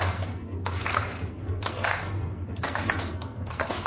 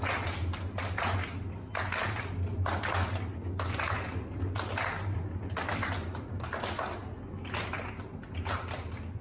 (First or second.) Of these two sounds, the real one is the second